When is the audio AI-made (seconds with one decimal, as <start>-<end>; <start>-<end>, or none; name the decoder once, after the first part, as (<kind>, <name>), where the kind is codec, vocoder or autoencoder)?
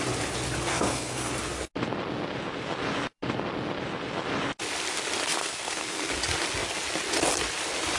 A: 0.7-1.3 (codec, SNAC); 5.4-6.1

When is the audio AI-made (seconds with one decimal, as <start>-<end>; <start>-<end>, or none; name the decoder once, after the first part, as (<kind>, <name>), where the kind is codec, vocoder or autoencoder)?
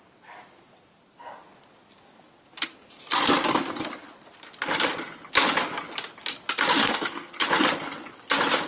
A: 6.8-7.3 (codec, SNAC)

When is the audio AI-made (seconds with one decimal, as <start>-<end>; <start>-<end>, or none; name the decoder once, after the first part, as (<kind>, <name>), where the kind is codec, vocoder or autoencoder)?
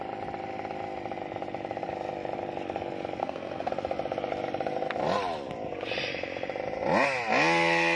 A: 3.2-3.7 (codec, SNAC)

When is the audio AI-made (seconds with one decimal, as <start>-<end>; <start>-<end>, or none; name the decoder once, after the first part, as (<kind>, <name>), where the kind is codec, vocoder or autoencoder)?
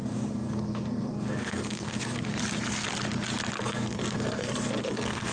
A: 0.0-2.3 (codec, SNAC); 3.6-5.3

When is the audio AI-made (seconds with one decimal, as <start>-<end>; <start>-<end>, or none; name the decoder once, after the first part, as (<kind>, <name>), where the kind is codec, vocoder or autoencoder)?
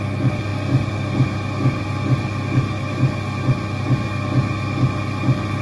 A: none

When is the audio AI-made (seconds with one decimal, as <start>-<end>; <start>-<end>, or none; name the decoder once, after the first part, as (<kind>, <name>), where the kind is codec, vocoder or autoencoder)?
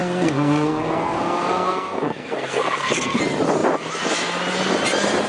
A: 0.0-3.2 (codec, SNAC)